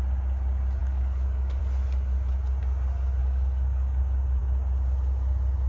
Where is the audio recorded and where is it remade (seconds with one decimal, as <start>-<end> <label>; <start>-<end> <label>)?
0.0-0.8 recorded; 0.8-1.6 remade; 1.6-3.2 recorded; 3.2-4.0 remade; 4.0-5.7 recorded